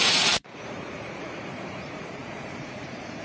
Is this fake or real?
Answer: fake